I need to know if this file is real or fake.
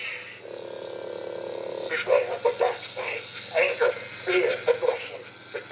real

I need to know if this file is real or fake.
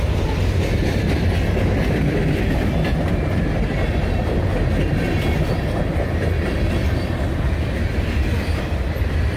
real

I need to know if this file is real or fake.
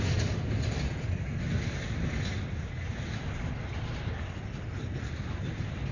real